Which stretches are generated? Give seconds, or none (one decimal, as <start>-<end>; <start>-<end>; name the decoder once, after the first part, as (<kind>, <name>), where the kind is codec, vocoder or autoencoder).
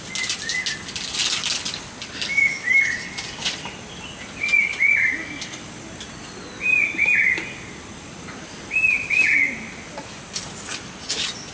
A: 2.3-2.8 (autoencoder, DAC-VAE)